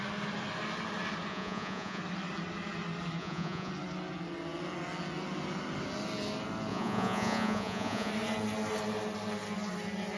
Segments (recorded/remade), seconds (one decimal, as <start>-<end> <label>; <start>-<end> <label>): 0.0-1.3 recorded; 1.3-2.0 remade; 2.0-3.2 recorded; 3.2-3.7 remade; 3.7-6.7 recorded; 6.7-8.1 remade; 8.1-10.2 recorded